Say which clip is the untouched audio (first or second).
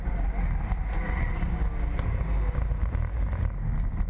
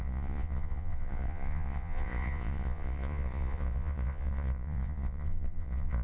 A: first